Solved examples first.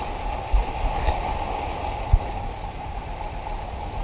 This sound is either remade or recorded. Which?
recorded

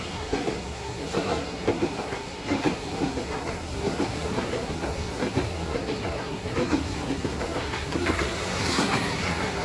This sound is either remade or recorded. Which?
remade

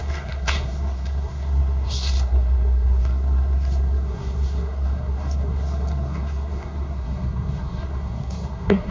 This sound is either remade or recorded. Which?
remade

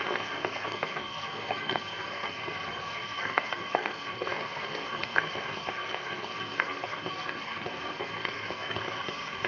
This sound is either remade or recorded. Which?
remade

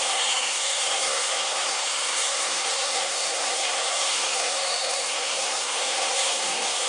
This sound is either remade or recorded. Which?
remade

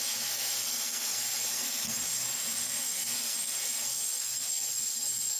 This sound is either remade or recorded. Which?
remade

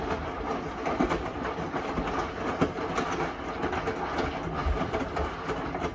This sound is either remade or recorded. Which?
recorded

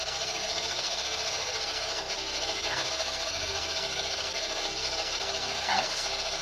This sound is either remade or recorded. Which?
remade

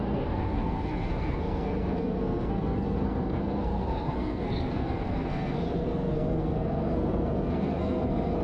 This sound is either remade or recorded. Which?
remade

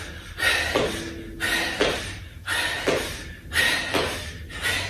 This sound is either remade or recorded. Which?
recorded